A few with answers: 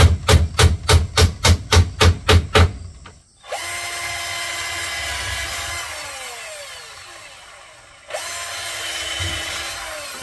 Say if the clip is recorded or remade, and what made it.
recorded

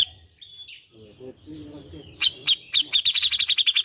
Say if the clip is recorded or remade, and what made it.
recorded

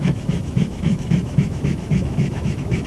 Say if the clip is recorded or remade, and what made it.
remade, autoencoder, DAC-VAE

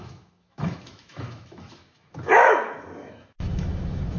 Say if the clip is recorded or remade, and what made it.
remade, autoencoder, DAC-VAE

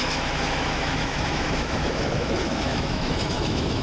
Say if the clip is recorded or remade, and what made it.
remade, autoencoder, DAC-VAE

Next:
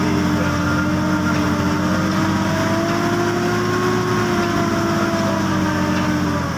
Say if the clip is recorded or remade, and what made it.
recorded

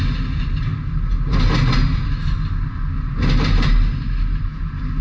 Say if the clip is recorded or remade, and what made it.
recorded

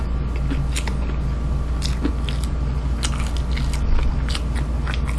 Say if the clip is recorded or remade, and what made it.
recorded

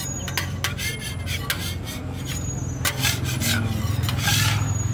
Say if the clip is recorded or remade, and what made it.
recorded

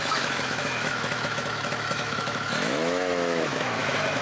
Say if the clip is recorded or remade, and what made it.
remade, autoencoder, DAC-VAE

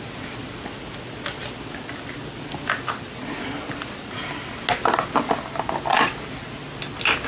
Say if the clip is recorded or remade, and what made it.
recorded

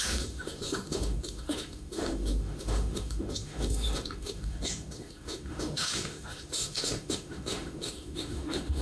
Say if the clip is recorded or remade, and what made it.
remade, autoencoder, DAC-VAE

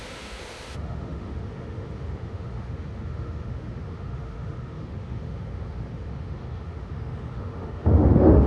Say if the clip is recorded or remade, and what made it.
remade, autoencoder, DAC-VAE